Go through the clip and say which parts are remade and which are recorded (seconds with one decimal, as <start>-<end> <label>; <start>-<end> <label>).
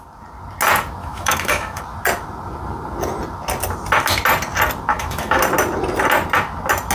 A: 0.0-1.0 recorded; 1.0-1.8 remade; 1.8-4.9 recorded; 4.9-5.4 remade; 5.4-6.9 recorded